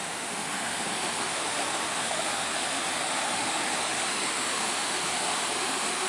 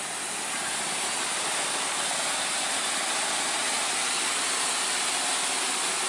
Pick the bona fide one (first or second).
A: second